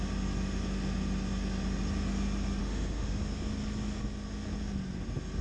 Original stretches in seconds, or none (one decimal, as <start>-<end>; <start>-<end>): 0.0-2.6; 3.2-5.4